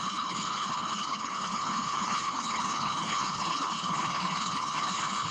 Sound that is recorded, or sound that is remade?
remade